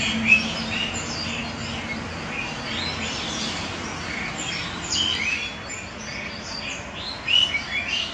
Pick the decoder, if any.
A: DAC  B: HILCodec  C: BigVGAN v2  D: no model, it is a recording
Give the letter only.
D